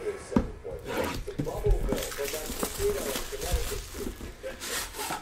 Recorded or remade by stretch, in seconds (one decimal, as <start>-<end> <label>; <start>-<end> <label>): 0.0-3.6 recorded; 3.6-4.7 remade; 4.7-5.2 recorded